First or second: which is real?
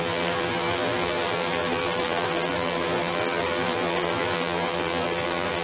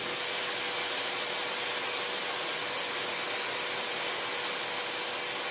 second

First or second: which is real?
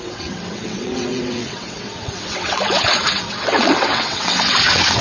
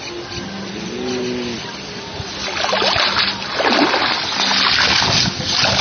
second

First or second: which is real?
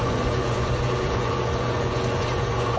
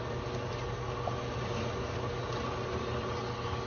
second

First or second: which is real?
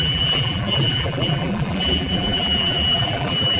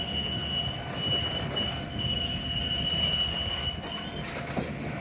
second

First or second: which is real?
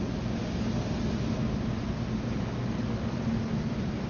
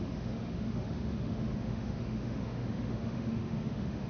first